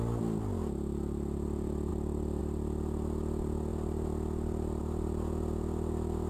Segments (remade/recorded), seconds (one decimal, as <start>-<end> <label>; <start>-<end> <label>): 0.0-6.3 recorded